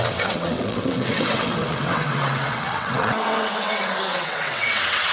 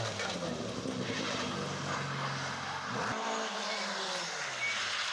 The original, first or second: second